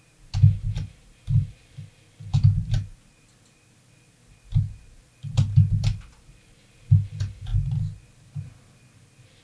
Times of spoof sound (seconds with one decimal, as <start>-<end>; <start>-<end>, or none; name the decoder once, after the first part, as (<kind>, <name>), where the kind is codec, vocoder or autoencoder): none